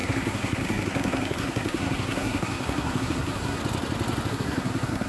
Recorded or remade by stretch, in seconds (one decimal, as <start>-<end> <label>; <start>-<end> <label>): 0.0-3.6 remade; 3.6-4.3 recorded; 4.3-5.1 remade

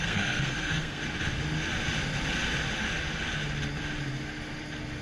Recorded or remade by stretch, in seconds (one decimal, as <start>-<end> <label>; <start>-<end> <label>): 0.0-1.0 remade; 1.0-5.0 recorded